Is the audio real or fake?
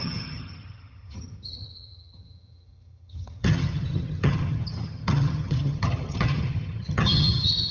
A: fake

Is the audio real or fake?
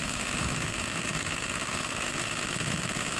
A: fake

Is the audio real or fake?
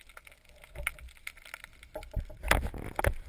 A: real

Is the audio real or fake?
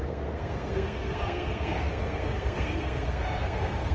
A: fake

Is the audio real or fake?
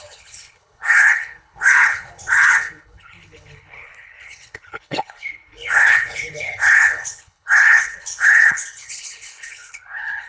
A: fake